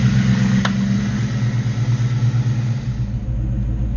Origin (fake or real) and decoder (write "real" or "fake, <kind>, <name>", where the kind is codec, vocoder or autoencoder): real